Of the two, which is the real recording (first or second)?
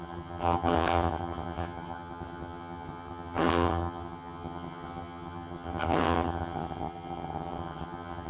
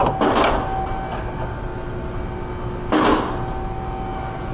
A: second